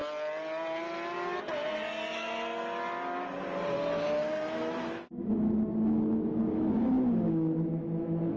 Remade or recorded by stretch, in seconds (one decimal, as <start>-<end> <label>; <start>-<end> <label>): 0.0-4.3 recorded; 4.3-8.4 remade